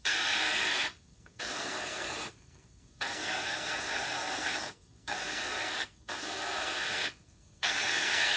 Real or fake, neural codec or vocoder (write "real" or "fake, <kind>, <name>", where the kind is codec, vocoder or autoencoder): fake, codec, SNAC